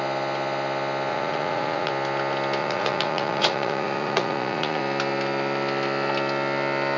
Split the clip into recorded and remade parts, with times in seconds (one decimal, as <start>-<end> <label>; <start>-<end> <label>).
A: 0.0-1.1 recorded; 1.1-1.9 remade; 1.9-2.6 recorded; 2.6-4.8 remade; 4.8-7.0 recorded